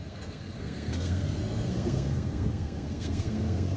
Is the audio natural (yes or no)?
no